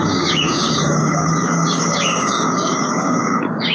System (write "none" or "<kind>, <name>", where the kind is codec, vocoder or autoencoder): codec, DAC